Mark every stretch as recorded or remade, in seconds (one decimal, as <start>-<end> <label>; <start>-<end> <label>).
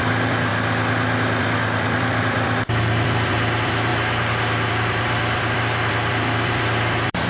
0.0-0.5 remade; 0.5-1.4 recorded; 1.4-3.9 remade; 3.9-4.7 recorded; 4.7-7.3 remade